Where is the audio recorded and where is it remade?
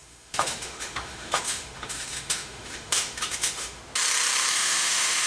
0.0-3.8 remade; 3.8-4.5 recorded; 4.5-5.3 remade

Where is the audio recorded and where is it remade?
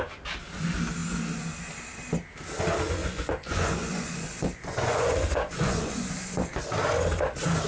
0.0-3.0 recorded; 3.0-6.6 remade; 6.6-7.7 recorded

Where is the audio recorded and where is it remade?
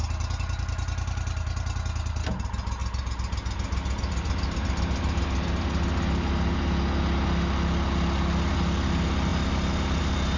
0.0-10.4 recorded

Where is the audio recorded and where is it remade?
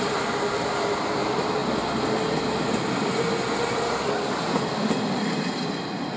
0.0-6.2 recorded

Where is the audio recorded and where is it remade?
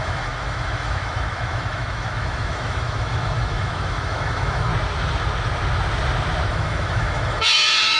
0.0-4.7 remade; 4.7-6.5 recorded; 6.5-8.0 remade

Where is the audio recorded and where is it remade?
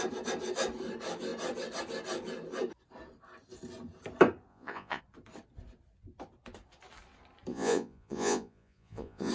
0.0-4.5 recorded; 4.5-5.0 remade; 5.0-7.5 recorded; 7.5-9.3 remade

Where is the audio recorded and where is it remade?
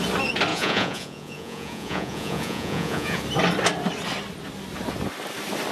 0.0-0.5 recorded; 0.5-3.2 remade; 3.2-5.7 recorded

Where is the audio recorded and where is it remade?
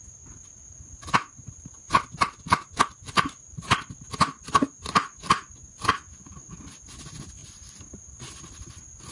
0.0-5.0 recorded; 5.0-5.9 remade; 5.9-9.1 recorded